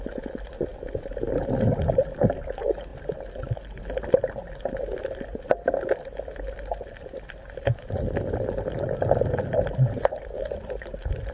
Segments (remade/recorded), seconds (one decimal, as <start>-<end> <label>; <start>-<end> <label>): 0.0-0.7 remade; 0.7-1.9 recorded; 1.9-2.9 remade; 2.9-4.7 recorded; 4.7-11.3 remade